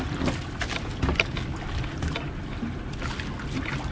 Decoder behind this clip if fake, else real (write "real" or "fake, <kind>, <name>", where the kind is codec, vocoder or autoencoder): real